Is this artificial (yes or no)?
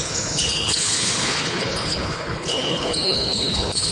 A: yes